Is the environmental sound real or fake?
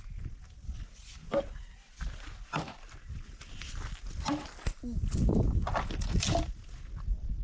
real